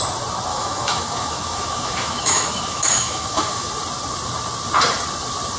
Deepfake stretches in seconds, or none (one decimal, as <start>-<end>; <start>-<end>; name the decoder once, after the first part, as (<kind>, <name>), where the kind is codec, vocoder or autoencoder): 0.5-3.7 (autoencoder, DAC-VAE)